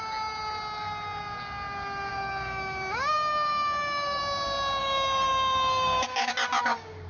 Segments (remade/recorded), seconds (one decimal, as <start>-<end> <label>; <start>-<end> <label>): 0.0-2.1 recorded; 2.1-4.2 remade; 4.2-4.8 recorded; 4.8-6.3 remade; 6.3-7.1 recorded